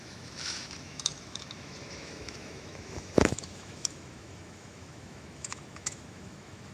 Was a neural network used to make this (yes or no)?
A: yes